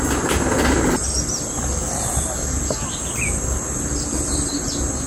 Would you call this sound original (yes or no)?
yes